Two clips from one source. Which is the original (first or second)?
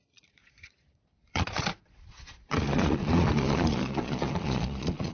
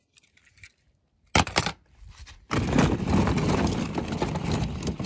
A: second